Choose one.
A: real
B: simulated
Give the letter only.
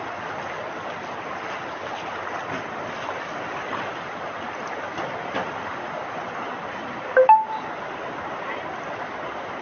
A